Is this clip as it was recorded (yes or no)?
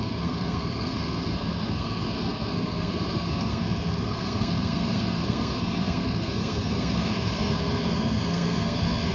no